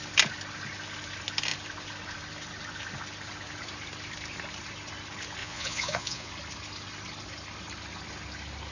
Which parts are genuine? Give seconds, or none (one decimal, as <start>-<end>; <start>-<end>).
0.0-5.4; 6.3-8.7